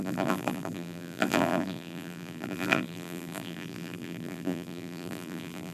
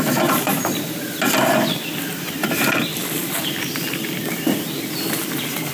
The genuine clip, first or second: second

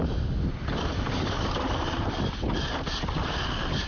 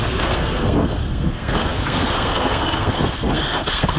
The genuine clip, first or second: first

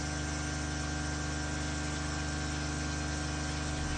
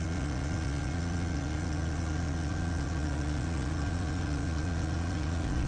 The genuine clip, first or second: first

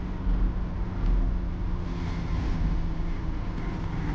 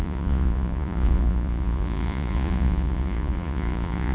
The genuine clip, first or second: first